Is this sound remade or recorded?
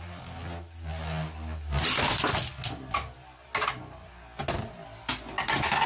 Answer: recorded